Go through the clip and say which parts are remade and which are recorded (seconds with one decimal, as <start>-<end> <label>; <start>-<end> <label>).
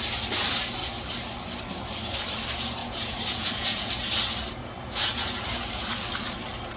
0.0-2.8 recorded; 2.8-3.9 remade; 3.9-4.6 recorded; 4.6-5.9 remade; 5.9-6.8 recorded